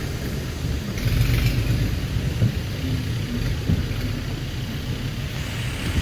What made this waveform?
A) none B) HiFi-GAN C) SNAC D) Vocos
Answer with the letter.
A